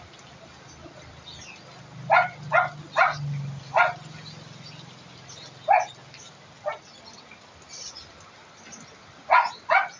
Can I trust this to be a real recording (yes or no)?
yes